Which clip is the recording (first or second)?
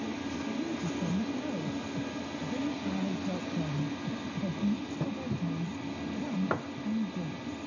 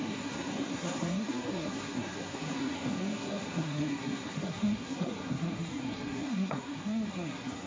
first